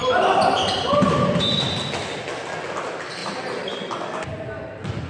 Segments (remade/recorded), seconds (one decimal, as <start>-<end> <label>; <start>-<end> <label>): 0.0-1.4 remade; 1.4-3.2 recorded; 3.2-3.9 remade; 3.9-5.1 recorded